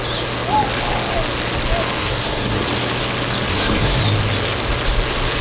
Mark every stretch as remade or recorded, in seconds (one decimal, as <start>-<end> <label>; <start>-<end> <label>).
0.0-2.0 recorded; 2.0-2.6 remade; 2.6-3.5 recorded; 3.5-4.0 remade; 4.0-5.4 recorded